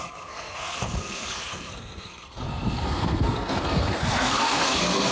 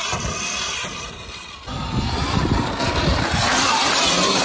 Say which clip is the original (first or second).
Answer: second